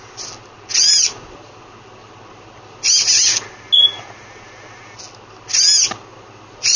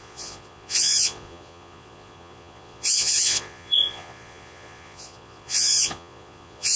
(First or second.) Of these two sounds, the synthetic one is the second